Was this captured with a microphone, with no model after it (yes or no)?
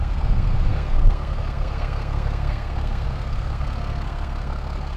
no